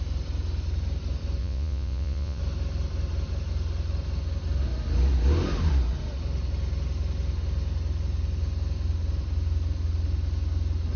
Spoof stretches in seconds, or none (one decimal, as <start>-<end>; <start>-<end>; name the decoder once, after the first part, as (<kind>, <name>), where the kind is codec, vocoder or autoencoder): 1.4-2.4 (vocoder, Vocos)